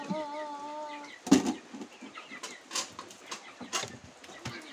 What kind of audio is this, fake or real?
real